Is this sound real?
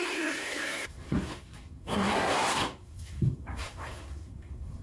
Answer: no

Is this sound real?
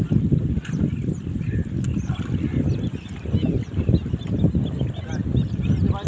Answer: yes